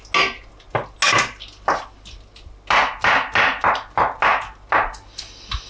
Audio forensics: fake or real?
real